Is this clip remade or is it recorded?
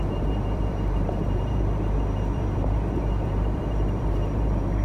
remade